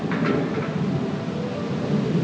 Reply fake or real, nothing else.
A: real